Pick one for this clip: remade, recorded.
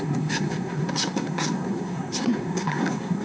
remade